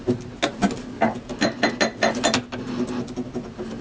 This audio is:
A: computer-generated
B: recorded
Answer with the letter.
B